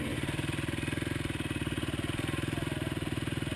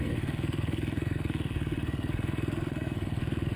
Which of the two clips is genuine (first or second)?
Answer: first